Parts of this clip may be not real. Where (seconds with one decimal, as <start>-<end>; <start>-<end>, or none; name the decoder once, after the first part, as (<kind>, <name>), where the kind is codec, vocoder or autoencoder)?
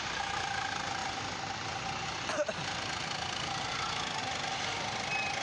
none